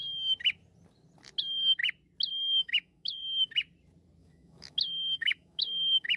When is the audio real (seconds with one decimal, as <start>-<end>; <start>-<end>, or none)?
0.0-2.3; 3.5-4.2